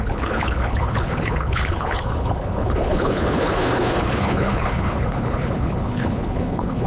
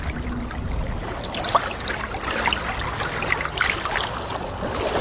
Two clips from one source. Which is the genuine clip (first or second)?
second